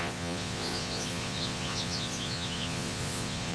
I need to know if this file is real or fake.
fake